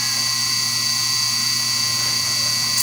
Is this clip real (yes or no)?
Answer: yes